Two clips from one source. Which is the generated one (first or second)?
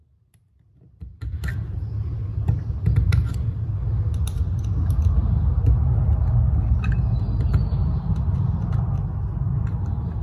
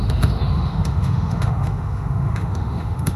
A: second